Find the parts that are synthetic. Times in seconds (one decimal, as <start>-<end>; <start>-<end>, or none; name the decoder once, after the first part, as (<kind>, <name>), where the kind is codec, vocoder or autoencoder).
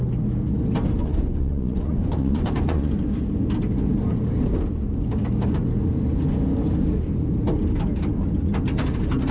1.0-2.9 (vocoder, Vocos)